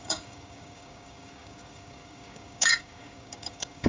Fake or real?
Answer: fake